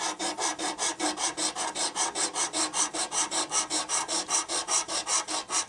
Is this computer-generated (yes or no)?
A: no